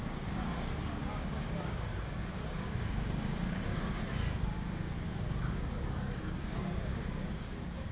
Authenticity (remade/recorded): remade